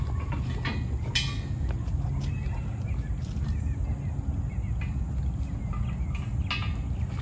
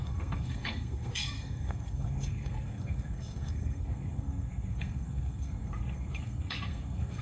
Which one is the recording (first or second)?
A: first